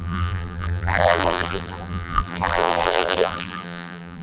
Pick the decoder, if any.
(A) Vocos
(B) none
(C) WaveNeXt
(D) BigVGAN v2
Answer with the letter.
D